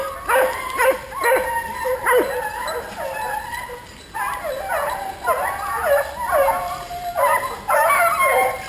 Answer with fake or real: real